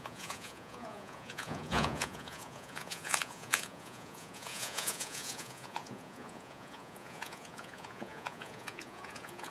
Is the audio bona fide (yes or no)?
no